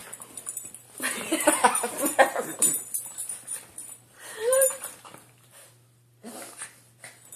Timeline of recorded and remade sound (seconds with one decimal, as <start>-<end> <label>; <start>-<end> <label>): 0.0-2.5 recorded; 2.5-5.3 remade; 5.3-7.4 recorded